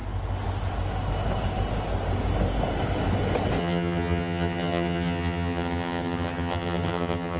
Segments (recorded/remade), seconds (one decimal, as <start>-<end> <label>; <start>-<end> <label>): 0.0-3.6 recorded; 3.6-7.4 remade